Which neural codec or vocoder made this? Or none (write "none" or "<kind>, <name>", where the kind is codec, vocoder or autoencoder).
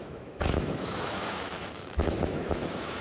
autoencoder, DAC-VAE